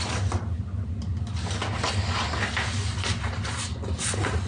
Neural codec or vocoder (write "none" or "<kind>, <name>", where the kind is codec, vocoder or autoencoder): none